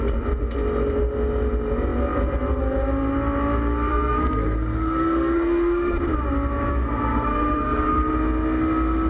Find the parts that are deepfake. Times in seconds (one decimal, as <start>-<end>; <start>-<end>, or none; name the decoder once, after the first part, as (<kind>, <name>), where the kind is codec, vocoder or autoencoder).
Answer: 3.9-6.0 (codec, SNAC); 6.7-8.1